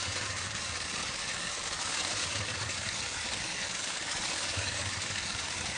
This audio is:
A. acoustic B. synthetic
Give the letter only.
B